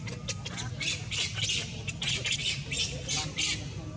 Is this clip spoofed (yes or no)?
no